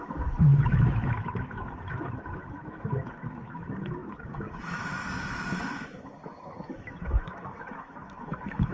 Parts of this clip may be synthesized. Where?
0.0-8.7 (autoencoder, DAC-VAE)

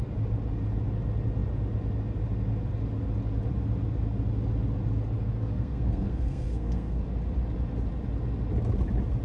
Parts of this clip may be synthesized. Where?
5.4-7.0 (codec, SNAC)